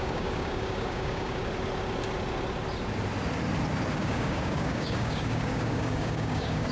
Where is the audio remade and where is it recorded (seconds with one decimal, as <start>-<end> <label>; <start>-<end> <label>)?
0.0-1.4 remade; 1.4-4.0 recorded; 4.0-6.7 remade